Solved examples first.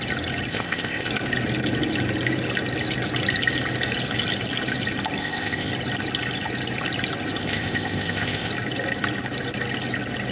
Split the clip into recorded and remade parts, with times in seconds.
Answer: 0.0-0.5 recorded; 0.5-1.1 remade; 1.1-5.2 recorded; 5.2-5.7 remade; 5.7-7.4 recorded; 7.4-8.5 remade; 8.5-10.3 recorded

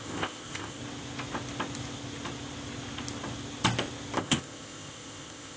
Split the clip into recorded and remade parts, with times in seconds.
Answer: 0.0-0.8 remade; 0.8-4.2 recorded; 4.2-5.6 remade

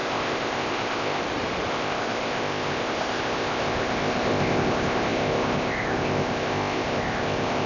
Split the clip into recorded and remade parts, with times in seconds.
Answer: 0.0-1.2 remade; 1.2-1.7 recorded; 1.7-7.7 remade

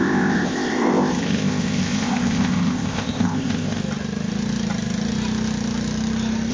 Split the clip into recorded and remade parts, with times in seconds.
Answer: 0.0-3.8 remade; 3.8-6.5 recorded

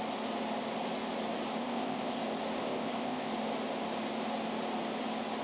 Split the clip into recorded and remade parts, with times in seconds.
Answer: 0.0-1.6 recorded; 1.6-2.2 remade; 2.2-2.6 recorded; 2.6-3.3 remade; 3.3-5.4 recorded

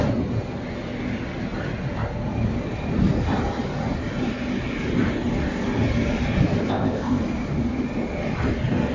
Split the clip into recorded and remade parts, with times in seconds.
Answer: 0.0-6.6 recorded; 6.6-7.2 remade; 7.2-8.9 recorded

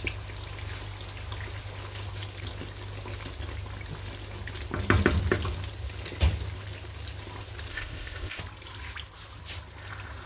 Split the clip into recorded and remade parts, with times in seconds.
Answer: 0.0-7.7 recorded; 7.7-8.4 remade; 8.4-10.3 recorded